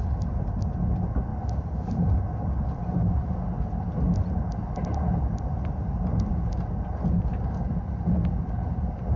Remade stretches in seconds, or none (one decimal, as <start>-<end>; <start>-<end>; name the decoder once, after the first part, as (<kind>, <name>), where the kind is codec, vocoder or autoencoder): none